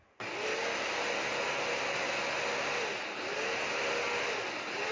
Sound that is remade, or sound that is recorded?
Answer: recorded